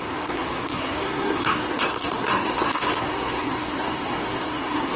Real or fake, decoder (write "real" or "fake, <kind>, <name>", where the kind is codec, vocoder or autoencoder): fake, codec, SNAC